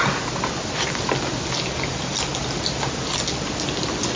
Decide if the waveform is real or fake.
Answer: real